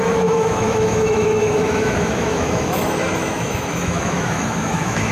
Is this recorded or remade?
remade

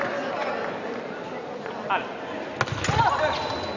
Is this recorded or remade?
recorded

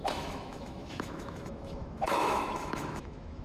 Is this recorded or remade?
remade